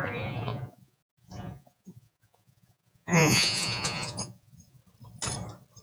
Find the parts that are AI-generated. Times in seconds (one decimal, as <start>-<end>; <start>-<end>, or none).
0.0-4.8